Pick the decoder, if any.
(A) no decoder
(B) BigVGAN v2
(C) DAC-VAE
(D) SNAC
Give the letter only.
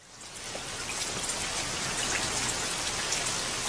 A